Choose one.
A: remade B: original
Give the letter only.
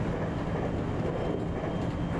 B